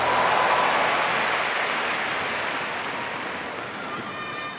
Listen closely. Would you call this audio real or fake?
real